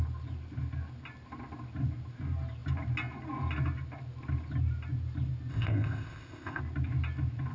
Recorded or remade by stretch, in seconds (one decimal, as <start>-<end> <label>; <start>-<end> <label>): 0.0-5.5 recorded; 5.5-6.6 remade; 6.6-7.5 recorded